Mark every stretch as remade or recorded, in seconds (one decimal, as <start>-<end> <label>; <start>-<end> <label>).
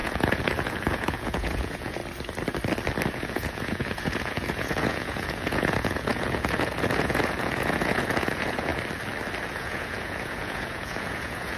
0.0-2.0 remade; 2.0-3.1 recorded; 3.1-8.7 remade; 8.7-9.5 recorded; 9.5-11.6 remade